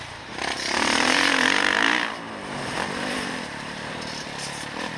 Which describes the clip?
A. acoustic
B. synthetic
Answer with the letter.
B